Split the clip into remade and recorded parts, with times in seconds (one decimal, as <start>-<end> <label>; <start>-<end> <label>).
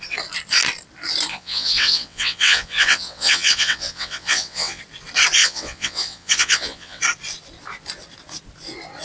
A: 0.0-1.3 recorded; 1.3-4.8 remade; 4.8-5.4 recorded; 5.4-7.0 remade; 7.0-9.0 recorded